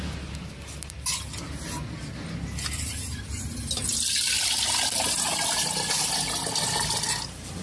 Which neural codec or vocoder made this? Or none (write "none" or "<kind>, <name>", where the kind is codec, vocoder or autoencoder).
none